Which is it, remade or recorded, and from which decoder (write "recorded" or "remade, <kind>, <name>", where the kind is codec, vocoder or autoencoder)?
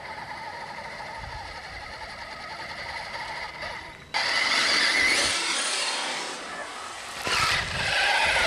recorded